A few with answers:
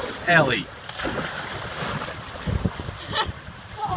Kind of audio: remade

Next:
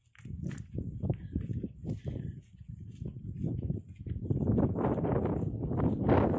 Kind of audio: remade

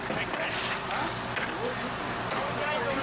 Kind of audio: remade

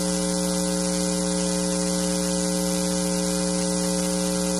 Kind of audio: recorded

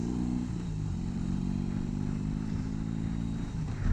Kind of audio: remade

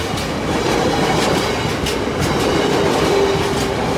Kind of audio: recorded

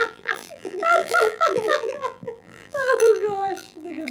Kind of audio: remade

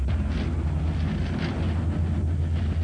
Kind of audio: recorded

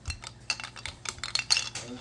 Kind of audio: recorded